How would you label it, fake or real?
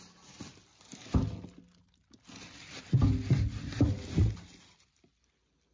real